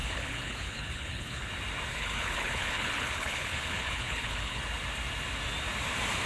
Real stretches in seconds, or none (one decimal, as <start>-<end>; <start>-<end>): 1.5-1.9; 4.6-6.3